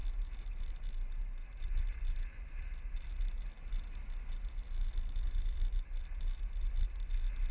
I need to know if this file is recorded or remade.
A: recorded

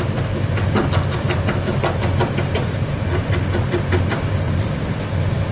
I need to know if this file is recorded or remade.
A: recorded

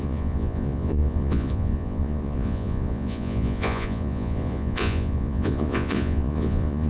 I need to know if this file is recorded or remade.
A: remade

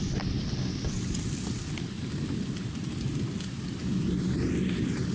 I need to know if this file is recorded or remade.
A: recorded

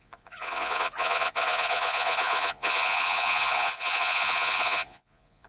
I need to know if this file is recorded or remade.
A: remade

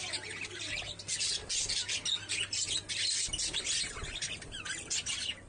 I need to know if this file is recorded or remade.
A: recorded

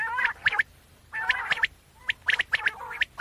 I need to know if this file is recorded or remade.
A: recorded